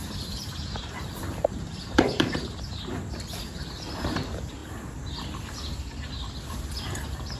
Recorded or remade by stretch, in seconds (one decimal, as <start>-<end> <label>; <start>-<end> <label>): 0.0-2.6 remade; 2.6-7.4 recorded